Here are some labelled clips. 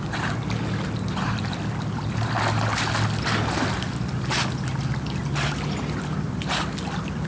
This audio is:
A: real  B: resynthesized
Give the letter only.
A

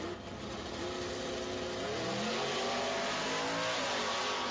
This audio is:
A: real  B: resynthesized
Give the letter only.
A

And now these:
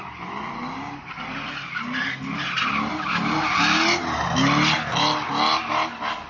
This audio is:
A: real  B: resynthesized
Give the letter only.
A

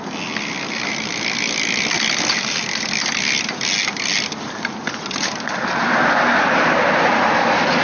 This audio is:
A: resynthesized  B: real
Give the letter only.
B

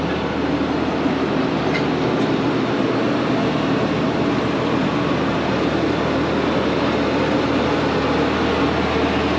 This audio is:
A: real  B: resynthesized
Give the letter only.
A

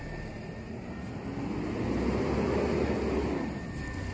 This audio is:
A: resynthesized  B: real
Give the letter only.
B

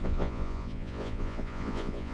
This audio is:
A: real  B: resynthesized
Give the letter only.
B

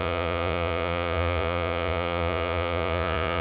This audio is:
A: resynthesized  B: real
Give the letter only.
A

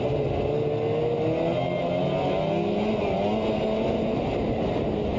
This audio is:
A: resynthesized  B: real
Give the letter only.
B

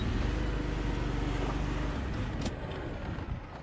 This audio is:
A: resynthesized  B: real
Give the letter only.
B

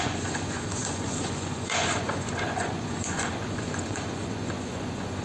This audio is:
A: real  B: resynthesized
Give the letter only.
B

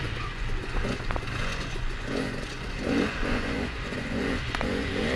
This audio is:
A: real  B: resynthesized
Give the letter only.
B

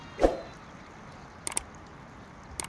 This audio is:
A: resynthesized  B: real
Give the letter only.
B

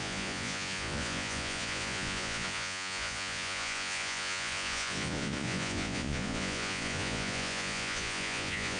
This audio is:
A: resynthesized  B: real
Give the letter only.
A